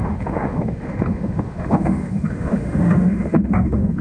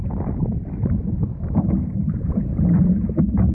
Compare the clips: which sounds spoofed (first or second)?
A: first